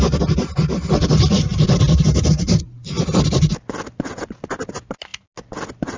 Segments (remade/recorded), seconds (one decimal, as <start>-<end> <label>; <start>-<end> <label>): 0.0-6.0 recorded